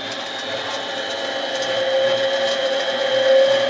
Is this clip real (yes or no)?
yes